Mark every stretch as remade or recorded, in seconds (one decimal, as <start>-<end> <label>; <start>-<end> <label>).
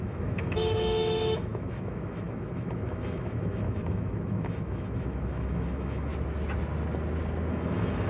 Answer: 0.0-6.1 remade; 6.1-7.5 recorded; 7.5-8.1 remade